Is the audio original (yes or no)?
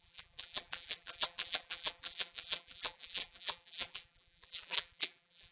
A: no